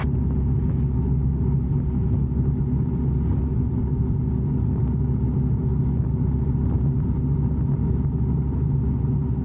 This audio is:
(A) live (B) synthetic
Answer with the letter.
A